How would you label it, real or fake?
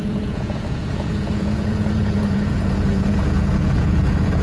fake